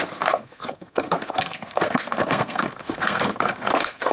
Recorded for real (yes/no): no